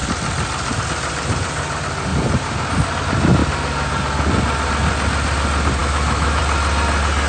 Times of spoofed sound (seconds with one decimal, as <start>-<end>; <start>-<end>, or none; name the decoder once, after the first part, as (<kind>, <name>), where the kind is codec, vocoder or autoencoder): 5.8-6.4 (autoencoder, DAC-VAE)